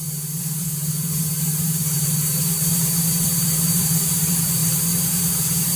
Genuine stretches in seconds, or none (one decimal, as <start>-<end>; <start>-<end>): none